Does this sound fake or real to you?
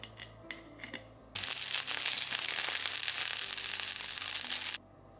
real